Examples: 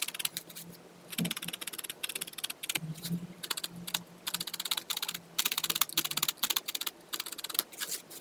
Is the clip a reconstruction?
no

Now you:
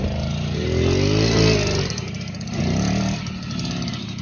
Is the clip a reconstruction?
no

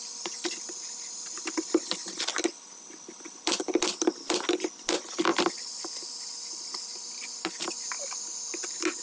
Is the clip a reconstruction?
no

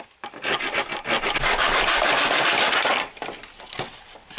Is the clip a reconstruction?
no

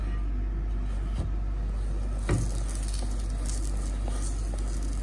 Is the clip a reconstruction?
no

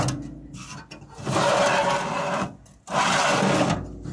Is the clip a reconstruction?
no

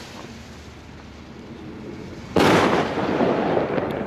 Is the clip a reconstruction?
no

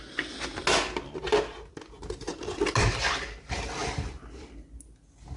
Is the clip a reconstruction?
no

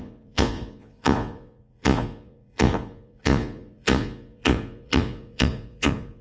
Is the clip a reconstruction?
yes